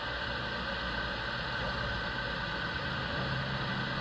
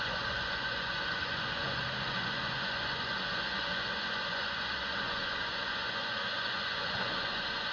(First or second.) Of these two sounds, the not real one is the second